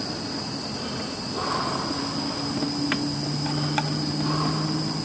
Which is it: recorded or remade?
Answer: recorded